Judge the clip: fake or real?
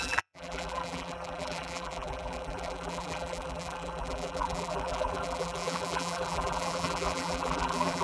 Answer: fake